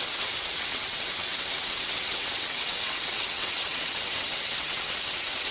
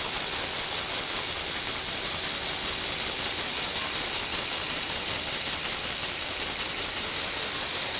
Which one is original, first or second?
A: second